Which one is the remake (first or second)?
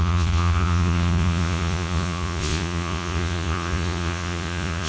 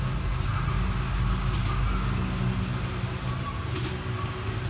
first